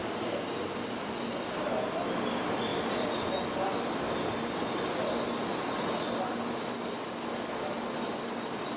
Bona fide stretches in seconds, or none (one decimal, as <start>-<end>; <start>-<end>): 1.1-2.7; 6.0-8.8